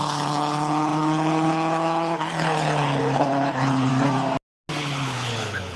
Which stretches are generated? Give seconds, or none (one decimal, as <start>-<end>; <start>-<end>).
0.0-3.9; 4.8-5.8